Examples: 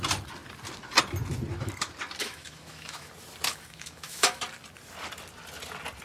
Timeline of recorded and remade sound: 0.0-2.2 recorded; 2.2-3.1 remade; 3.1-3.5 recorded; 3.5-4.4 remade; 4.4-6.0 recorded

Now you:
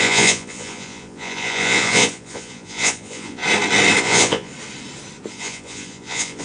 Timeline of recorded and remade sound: 0.0-3.4 remade; 3.4-4.0 recorded; 4.0-4.5 remade; 4.5-5.3 recorded; 5.3-6.4 remade

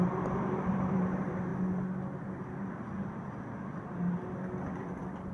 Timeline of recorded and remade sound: 0.0-1.5 remade; 1.5-4.7 recorded; 4.7-5.3 remade

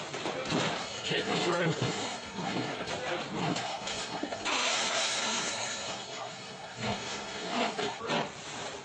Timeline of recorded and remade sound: 0.0-0.8 recorded; 0.8-2.9 remade; 2.9-3.4 recorded; 3.4-8.0 remade; 8.0-8.8 recorded

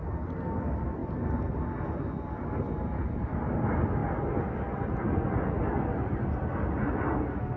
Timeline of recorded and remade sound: 0.0-7.6 recorded

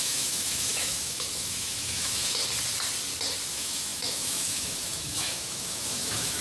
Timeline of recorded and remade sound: 0.0-2.4 remade; 2.4-3.5 recorded; 3.5-6.4 remade

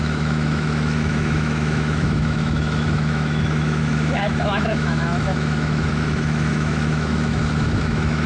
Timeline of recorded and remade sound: 0.0-8.3 remade

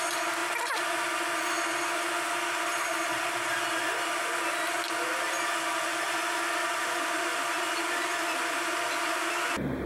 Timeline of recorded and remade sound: 0.0-9.9 recorded